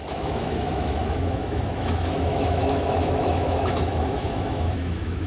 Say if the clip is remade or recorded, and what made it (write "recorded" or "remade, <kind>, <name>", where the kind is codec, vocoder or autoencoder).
remade, autoencoder, DAC-VAE